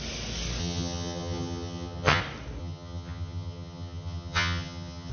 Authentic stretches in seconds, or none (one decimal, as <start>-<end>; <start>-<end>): 0.0-0.6; 2.2-2.6